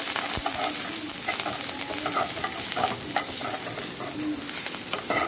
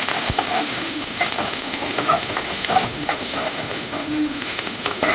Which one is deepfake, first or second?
second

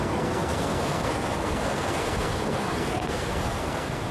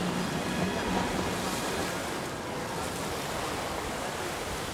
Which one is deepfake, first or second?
first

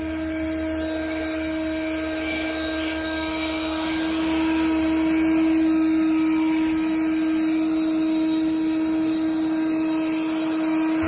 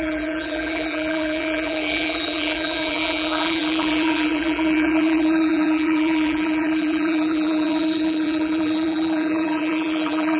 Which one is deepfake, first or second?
second